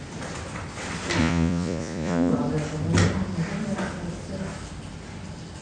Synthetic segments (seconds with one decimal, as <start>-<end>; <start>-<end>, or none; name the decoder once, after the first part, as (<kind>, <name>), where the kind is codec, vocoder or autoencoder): 1.2-2.3 (vocoder, Vocos)